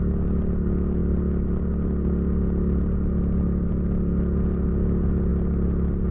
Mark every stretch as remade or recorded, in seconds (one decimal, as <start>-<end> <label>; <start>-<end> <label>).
0.0-6.1 recorded